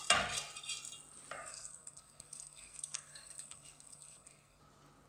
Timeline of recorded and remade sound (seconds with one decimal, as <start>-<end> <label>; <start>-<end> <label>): 0.0-1.5 recorded; 1.5-4.6 remade; 4.6-5.1 recorded